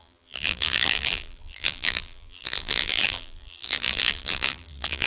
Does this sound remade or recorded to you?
remade